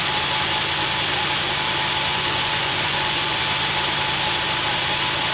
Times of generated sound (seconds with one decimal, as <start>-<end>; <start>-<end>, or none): 2.1-3.4